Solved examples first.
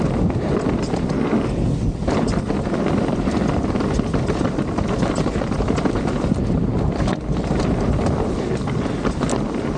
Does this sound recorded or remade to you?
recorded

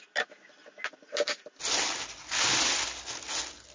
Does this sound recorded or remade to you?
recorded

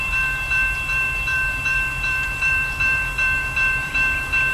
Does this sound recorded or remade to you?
remade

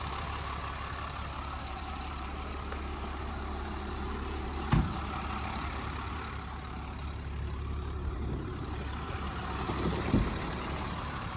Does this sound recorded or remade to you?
remade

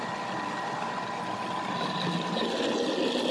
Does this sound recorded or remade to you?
recorded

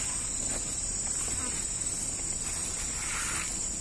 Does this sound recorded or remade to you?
recorded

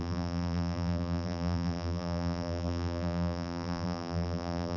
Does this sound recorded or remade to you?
remade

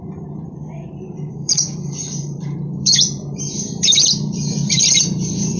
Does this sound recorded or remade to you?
remade